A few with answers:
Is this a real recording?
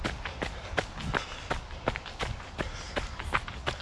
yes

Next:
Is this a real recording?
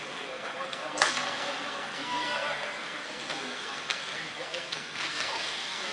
no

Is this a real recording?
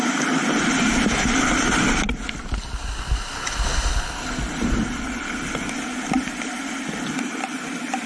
yes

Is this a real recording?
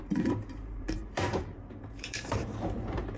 no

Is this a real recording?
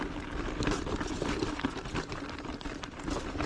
yes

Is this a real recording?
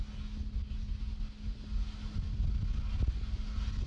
yes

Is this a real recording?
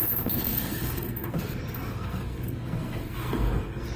no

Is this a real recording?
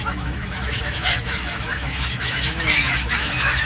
no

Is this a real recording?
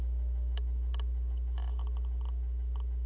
yes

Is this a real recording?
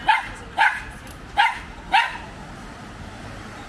yes